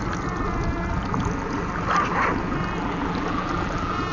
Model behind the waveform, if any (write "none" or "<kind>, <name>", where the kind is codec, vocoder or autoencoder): none